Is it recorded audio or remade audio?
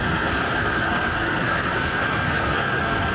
remade